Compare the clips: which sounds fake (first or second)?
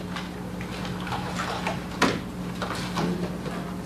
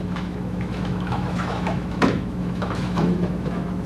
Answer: second